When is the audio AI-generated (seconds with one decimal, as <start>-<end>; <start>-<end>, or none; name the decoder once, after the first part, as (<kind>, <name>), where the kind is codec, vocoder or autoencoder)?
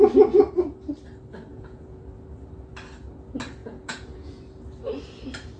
1.5-2.0 (vocoder, Vocos); 3.6-4.4